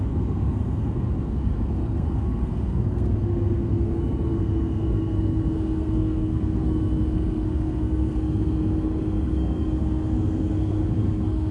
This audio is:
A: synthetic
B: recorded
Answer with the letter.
A